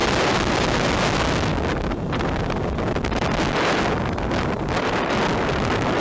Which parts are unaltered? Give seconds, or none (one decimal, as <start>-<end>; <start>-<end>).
0.0-6.0